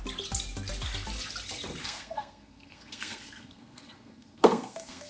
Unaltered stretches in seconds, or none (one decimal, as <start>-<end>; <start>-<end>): 0.0-1.8